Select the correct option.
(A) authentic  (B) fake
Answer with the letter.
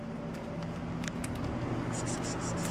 A